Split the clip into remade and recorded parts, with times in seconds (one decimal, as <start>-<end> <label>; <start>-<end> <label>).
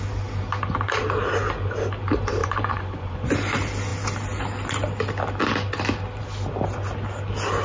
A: 0.0-2.4 recorded; 2.4-3.3 remade; 3.3-7.6 recorded